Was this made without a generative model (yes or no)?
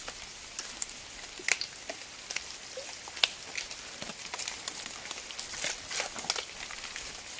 yes